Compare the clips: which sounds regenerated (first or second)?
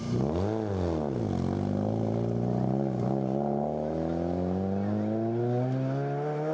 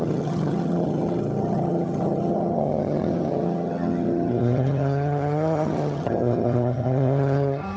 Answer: second